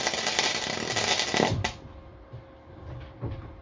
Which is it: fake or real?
real